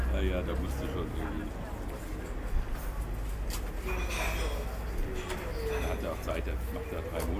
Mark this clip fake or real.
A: real